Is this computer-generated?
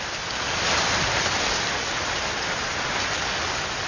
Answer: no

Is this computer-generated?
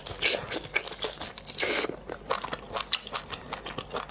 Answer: no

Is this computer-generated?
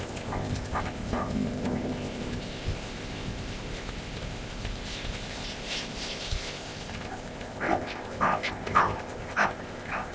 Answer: yes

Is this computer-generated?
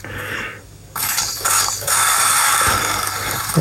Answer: yes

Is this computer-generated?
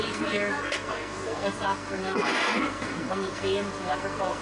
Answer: yes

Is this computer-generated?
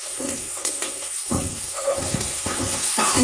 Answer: yes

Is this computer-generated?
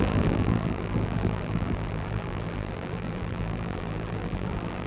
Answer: yes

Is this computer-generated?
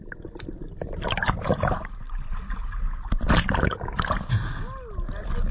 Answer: no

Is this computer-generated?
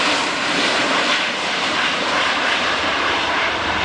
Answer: yes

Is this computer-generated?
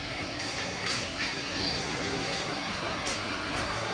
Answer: yes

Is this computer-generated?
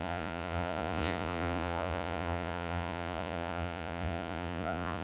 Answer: yes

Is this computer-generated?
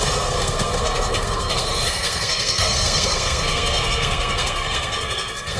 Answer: yes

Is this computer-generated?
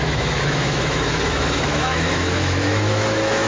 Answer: yes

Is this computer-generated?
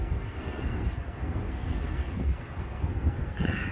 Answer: yes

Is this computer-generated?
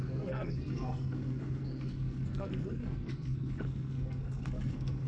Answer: yes